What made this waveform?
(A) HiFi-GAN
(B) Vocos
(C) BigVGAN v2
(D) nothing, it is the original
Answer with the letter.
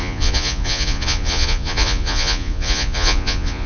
B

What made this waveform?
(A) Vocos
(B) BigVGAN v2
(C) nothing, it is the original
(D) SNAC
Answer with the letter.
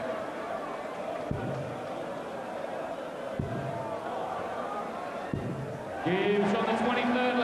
C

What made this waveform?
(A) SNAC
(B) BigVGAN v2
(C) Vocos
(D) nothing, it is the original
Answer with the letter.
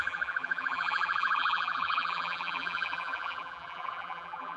B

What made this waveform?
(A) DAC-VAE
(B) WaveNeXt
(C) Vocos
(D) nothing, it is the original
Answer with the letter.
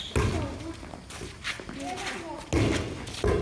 D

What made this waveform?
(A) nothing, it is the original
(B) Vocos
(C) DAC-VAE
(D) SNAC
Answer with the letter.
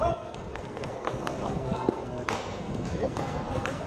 D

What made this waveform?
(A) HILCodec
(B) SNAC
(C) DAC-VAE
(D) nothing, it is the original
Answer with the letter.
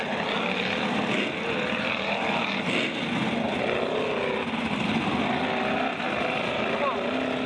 D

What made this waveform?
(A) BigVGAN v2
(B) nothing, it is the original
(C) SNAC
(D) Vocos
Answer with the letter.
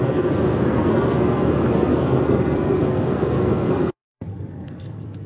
C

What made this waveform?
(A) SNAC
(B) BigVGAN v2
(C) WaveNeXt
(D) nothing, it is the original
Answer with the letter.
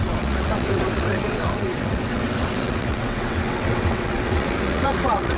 C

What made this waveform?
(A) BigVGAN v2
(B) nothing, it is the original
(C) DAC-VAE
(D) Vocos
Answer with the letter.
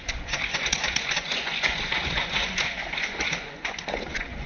D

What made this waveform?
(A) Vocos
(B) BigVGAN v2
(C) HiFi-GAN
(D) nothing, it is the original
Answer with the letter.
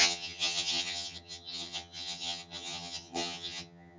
C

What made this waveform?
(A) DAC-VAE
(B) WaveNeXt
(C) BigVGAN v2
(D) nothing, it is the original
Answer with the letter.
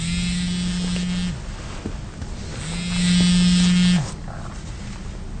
D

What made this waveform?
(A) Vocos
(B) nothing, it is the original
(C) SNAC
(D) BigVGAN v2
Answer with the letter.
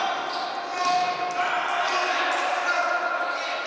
B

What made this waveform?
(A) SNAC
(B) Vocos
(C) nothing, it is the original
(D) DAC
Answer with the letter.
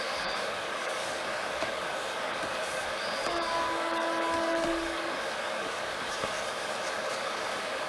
D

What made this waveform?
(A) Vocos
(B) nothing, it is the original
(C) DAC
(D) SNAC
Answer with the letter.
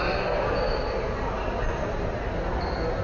B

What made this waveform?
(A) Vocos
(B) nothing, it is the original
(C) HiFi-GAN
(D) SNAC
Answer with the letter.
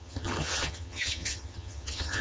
C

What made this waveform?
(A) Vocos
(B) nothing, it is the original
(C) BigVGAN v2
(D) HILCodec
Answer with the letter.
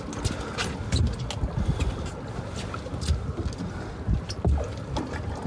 B